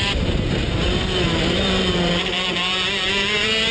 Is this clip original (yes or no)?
no